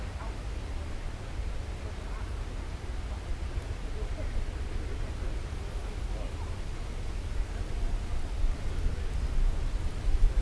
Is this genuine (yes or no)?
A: yes